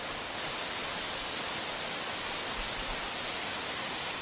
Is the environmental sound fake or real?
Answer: real